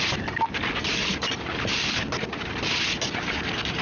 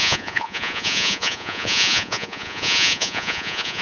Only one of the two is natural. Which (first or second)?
first